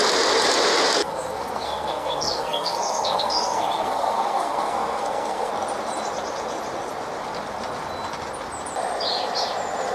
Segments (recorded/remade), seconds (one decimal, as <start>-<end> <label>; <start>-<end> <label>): 0.0-1.0 recorded; 1.0-5.5 remade; 5.5-9.9 recorded